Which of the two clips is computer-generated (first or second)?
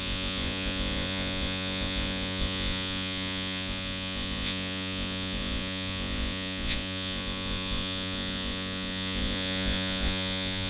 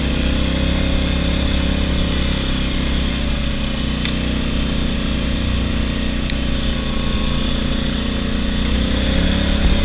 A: first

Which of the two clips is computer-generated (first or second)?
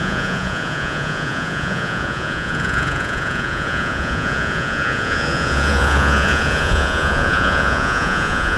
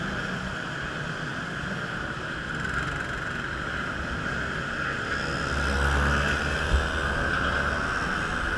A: first